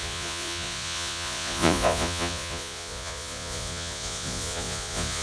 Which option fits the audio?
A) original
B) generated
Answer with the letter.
B